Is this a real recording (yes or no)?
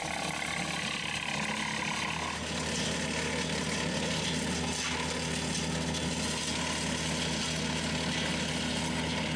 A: yes